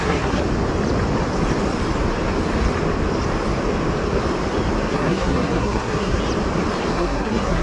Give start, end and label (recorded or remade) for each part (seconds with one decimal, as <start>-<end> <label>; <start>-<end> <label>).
0.0-0.4 remade; 0.4-4.9 recorded; 4.9-6.2 remade; 6.2-6.9 recorded; 6.9-7.6 remade